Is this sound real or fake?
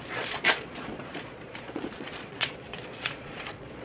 fake